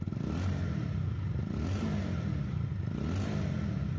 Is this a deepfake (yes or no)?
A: no